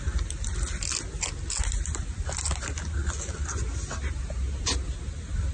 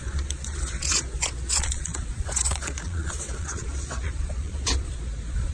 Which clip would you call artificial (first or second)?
second